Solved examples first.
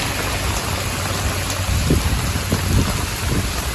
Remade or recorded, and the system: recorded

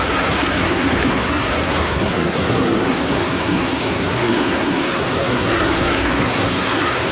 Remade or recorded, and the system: remade, codec, SNAC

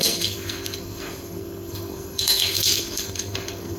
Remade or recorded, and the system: remade, codec, SNAC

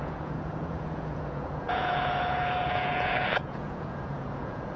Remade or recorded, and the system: remade, vocoder, Vocos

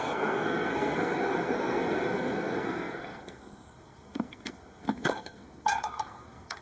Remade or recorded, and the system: remade, codec, SNAC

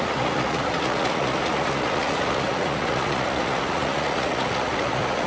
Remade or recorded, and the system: remade, vocoder, Vocos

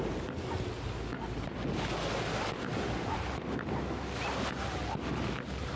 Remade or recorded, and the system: recorded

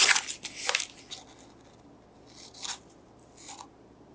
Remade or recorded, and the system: recorded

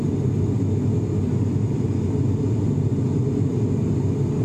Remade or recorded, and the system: recorded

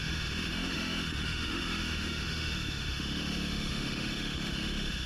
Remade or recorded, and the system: remade, autoencoder, DAC-VAE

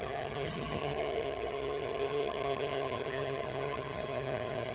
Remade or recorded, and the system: remade, vocoder, HiFi-GAN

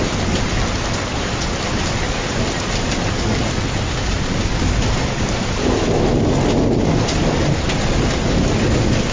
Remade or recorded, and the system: recorded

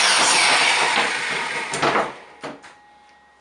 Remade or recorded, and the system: recorded